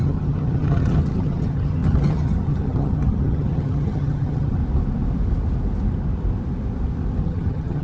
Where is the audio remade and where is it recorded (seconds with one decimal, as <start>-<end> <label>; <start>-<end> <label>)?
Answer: 0.0-4.6 remade; 4.6-7.2 recorded; 7.2-7.8 remade